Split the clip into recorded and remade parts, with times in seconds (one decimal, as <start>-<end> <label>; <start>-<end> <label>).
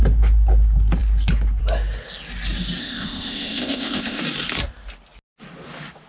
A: 0.0-2.8 recorded; 2.8-4.2 remade; 4.2-6.1 recorded